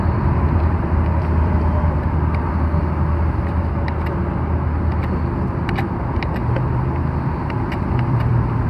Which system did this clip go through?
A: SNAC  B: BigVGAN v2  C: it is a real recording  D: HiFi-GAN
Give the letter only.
B